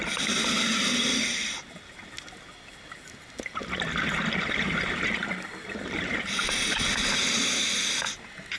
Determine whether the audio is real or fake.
real